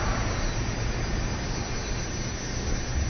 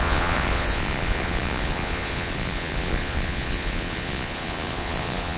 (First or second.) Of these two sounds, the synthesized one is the second